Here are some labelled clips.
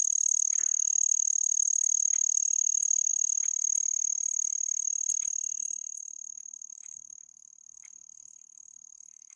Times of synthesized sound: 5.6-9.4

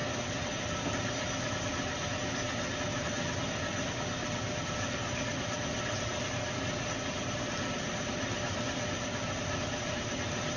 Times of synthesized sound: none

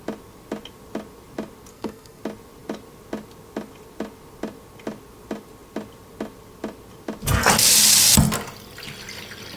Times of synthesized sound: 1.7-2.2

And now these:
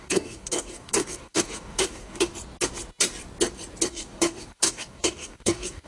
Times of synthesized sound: 0.0-2.3; 3.9-5.9

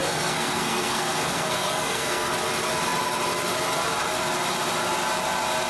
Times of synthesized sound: 0.0-2.3